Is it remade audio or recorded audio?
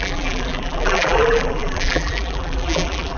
remade